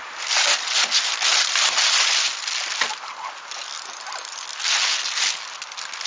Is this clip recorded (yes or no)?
yes